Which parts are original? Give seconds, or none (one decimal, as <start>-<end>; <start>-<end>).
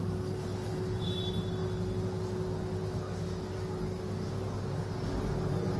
0.0-0.4; 1.1-5.8